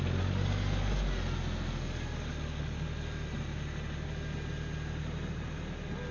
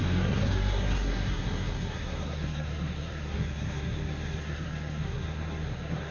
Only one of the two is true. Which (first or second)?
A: first